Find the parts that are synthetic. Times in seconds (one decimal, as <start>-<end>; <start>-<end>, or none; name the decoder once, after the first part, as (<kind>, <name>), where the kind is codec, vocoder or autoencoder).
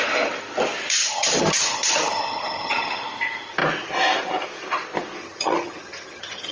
1.0-3.0 (vocoder, HiFi-GAN); 5.2-6.5